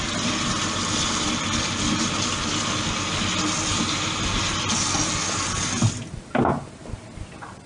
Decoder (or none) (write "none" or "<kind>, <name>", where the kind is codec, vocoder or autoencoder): none